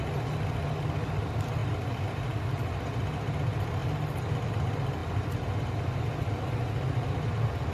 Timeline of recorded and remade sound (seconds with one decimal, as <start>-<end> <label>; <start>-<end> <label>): 0.0-1.6 recorded; 1.6-2.5 remade; 2.5-3.8 recorded; 3.8-4.5 remade; 4.5-5.0 recorded; 5.0-5.5 remade; 5.5-7.7 recorded